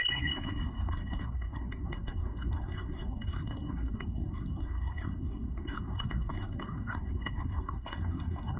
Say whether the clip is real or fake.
fake